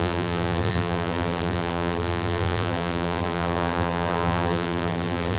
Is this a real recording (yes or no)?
no